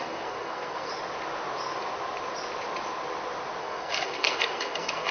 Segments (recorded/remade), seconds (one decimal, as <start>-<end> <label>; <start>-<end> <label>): 0.0-0.9 remade; 0.9-3.6 recorded; 3.6-5.1 remade